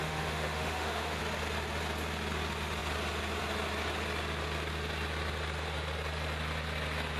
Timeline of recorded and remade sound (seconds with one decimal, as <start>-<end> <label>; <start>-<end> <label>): 0.0-1.2 remade; 1.2-7.2 recorded